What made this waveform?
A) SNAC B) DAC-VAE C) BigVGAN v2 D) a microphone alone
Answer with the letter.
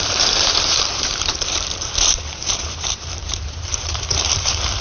C